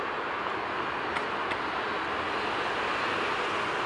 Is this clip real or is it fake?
real